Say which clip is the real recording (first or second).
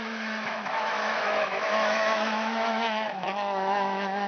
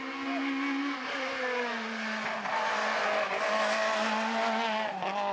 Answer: second